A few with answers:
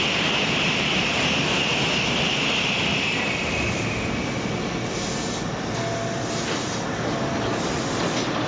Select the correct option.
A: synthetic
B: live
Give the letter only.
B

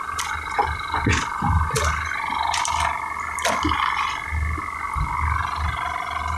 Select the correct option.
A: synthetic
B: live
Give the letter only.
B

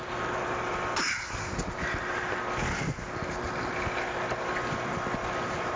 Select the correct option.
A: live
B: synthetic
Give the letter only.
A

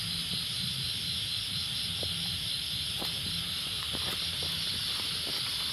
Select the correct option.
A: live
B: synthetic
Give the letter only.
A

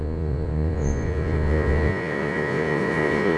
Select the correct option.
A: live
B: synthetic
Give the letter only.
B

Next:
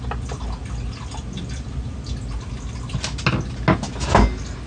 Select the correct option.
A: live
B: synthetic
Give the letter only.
A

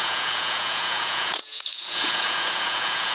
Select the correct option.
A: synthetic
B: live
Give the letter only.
A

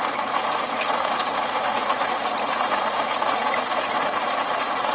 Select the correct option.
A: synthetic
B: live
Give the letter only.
A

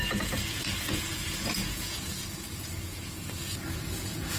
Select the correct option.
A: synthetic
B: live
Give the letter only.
A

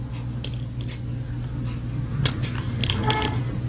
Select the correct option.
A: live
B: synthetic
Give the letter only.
A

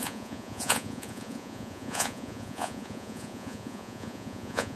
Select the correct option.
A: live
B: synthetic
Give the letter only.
B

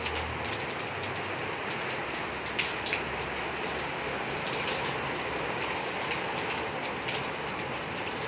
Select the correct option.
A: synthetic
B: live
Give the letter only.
B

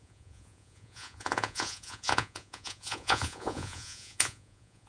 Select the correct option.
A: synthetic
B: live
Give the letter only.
A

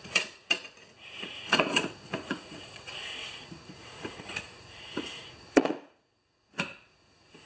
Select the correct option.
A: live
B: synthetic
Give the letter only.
B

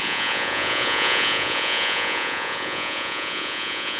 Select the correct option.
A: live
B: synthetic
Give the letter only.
B